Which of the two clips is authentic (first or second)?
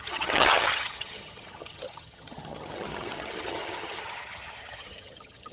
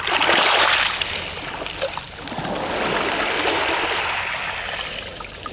second